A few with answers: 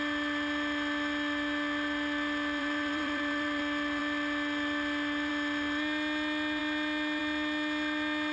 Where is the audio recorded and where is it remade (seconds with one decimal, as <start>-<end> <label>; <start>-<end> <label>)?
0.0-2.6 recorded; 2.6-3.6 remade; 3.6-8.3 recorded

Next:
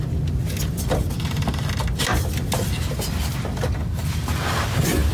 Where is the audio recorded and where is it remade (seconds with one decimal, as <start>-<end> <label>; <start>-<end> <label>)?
0.0-5.1 recorded

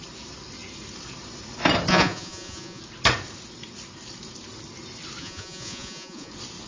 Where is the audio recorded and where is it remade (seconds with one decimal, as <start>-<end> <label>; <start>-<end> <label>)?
0.0-1.9 recorded; 1.9-2.8 remade; 2.8-5.2 recorded; 5.2-6.3 remade; 6.3-6.7 recorded